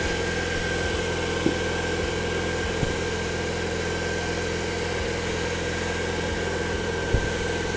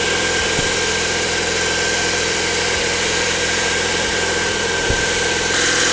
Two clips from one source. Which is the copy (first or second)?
second